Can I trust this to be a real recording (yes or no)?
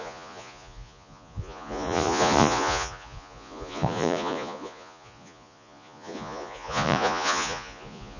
no